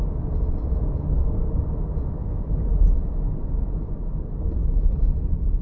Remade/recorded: recorded